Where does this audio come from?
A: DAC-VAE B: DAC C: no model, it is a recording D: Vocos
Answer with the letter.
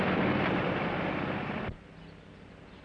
C